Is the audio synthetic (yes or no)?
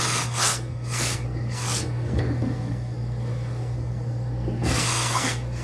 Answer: yes